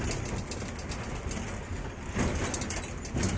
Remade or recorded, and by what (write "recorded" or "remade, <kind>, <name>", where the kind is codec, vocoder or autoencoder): recorded